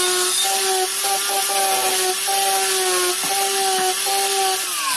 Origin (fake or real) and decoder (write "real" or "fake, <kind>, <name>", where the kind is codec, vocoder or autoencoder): real